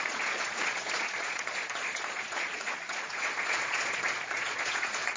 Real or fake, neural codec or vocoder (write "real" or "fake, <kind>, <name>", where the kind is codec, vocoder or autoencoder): fake, vocoder, Vocos